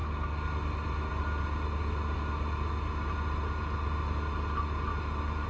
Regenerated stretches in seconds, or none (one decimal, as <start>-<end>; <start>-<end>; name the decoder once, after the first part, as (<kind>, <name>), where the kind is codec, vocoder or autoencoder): none